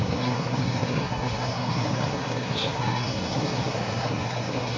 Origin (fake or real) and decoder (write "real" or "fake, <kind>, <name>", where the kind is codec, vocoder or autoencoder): fake, codec, SNAC